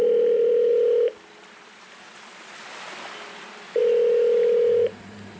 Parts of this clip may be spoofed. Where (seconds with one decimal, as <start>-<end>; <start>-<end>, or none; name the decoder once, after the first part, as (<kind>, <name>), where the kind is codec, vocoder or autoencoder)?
0.0-0.7 (vocoder, BigVGAN v2); 1.3-3.8; 5.0-5.4